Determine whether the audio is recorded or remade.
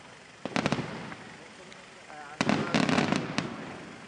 recorded